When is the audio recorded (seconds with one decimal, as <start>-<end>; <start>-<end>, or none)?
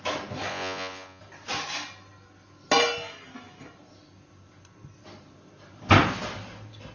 0.0-0.5; 1.2-6.9